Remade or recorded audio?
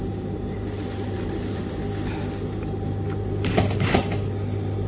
recorded